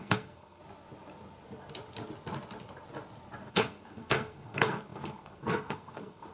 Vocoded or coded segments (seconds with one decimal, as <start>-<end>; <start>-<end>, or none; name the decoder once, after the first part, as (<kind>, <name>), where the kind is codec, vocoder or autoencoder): 0.0-0.6 (codec, SNAC); 3.5-6.3